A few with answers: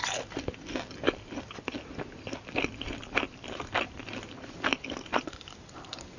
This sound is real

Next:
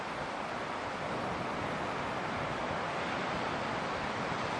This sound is fake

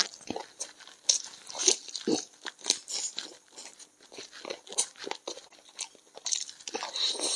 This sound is real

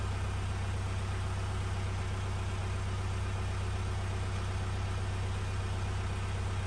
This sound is real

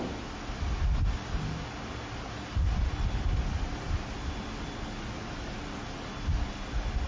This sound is real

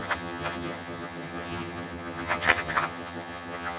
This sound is fake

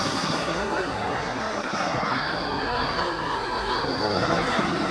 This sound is fake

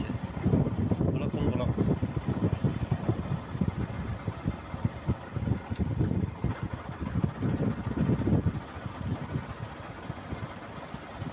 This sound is real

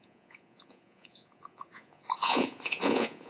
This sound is fake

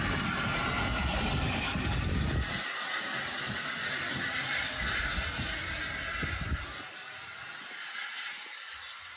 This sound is real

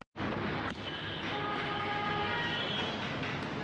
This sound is real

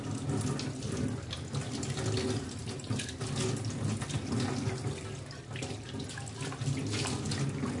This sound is real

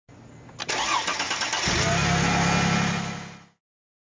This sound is real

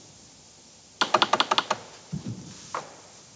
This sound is real